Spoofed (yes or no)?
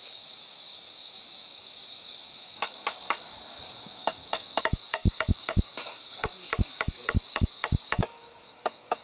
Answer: yes